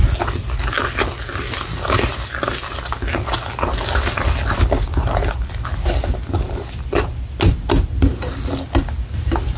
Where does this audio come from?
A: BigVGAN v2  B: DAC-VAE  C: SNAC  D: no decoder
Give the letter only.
D